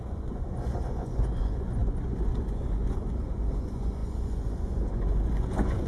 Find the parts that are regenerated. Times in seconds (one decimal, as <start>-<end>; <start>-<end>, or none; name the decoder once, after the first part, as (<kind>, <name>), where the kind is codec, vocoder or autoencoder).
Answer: 0.0-5.9 (vocoder, Vocos)

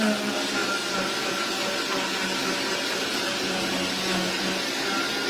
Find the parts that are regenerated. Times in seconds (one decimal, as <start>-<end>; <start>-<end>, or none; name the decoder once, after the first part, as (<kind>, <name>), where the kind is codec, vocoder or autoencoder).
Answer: none

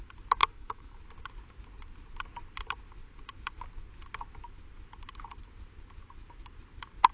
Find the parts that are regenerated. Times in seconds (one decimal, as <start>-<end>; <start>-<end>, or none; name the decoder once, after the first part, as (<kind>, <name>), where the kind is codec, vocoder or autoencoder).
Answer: 0.4-1.0 (autoencoder, DAC-VAE)